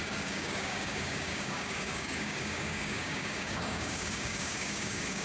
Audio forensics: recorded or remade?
remade